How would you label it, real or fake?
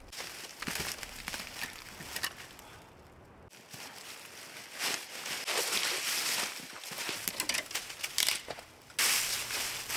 real